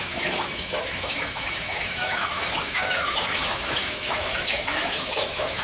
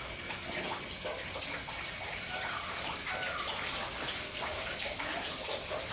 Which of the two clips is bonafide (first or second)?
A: second